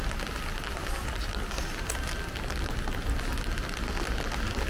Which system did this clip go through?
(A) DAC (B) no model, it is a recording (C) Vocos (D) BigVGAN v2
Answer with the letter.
B